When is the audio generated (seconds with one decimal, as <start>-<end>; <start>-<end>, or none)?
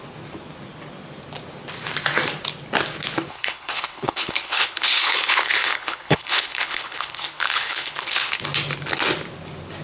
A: 3.3-8.4